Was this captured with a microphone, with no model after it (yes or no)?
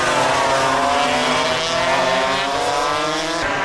yes